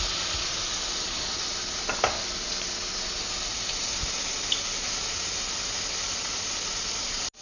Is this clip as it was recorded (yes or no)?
yes